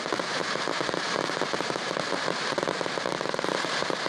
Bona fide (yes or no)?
no